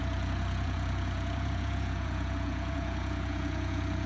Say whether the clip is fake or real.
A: fake